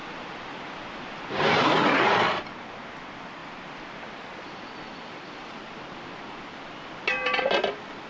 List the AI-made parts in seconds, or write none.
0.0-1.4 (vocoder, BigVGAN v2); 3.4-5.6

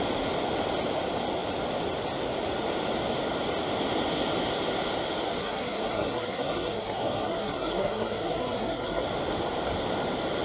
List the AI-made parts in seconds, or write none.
5.4-9.0 (codec, SNAC)

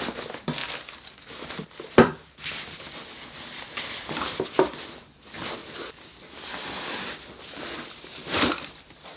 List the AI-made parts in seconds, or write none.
0.6-2.9 (vocoder, BigVGAN v2); 5.6-6.3

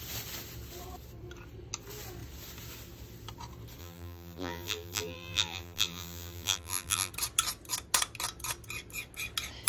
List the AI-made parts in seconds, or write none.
3.8-7.1 (vocoder, BigVGAN v2)

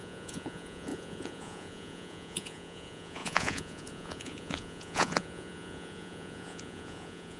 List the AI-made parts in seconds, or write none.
0.0-7.4 (vocoder, Vocos)

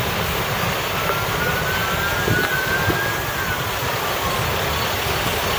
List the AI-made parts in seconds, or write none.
none